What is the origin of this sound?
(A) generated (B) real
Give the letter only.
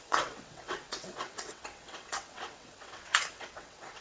A